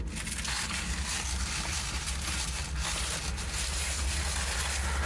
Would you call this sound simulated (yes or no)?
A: no